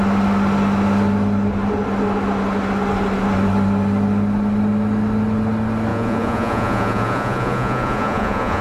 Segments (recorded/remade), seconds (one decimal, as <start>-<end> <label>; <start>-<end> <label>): 0.0-5.9 recorded; 5.9-8.6 remade

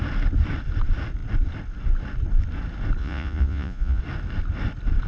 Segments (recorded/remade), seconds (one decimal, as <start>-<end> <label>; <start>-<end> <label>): 0.0-3.0 recorded; 3.0-4.0 remade; 4.0-5.1 recorded